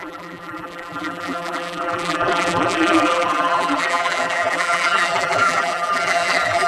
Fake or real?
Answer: fake